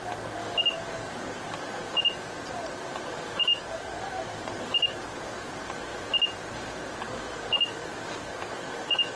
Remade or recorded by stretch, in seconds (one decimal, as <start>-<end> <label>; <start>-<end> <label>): 0.0-1.8 remade; 1.8-2.8 recorded; 2.8-5.9 remade; 5.9-7.0 recorded; 7.0-9.2 remade